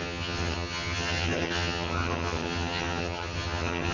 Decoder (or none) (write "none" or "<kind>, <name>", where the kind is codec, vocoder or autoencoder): vocoder, HiFi-GAN